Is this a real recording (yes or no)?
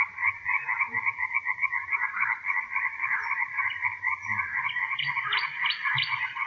no